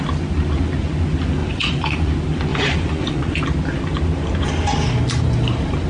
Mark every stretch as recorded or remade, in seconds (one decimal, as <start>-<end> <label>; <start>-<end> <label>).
0.0-1.4 recorded; 1.4-2.1 remade; 2.1-2.5 recorded; 2.5-3.4 remade; 3.4-5.9 recorded